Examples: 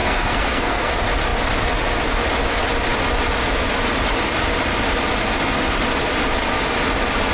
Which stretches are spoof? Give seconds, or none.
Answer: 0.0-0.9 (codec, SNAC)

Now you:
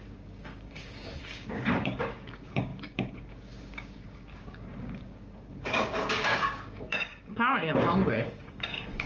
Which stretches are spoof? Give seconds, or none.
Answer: 0.0-9.1 (codec, DAC)

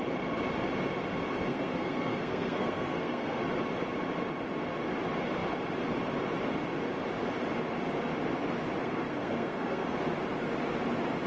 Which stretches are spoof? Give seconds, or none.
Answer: 1.5-3.4 (codec, SNAC); 8.8-10.0

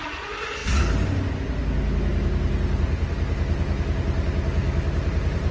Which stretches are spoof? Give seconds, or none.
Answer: 2.1-4.0 (vocoder, BigVGAN v2); 4.6-5.5

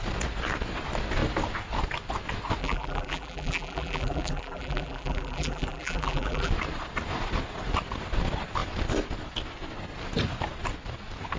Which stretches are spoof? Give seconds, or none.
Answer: 2.6-6.5 (vocoder, BigVGAN v2)

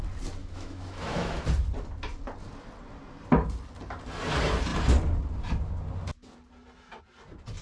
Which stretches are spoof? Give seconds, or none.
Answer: 0.4-1.4 (autoencoder, DAC-VAE)

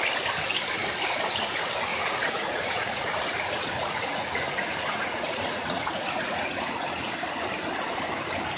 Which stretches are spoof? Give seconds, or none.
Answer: 1.9-7.1 (vocoder, Vocos)